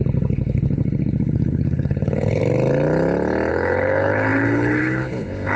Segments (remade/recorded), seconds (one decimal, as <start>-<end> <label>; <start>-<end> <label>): 0.0-2.4 remade; 2.4-3.5 recorded; 3.5-5.6 remade